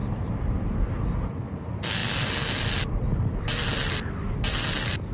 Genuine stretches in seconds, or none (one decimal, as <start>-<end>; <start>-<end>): 0.6-5.1